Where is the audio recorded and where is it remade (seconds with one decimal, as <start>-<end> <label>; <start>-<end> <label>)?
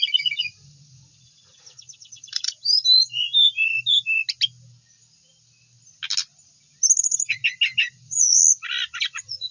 0.0-2.6 remade; 2.6-7.0 recorded; 7.0-7.4 remade; 7.4-7.9 recorded; 7.9-8.4 remade; 8.4-9.0 recorded; 9.0-9.5 remade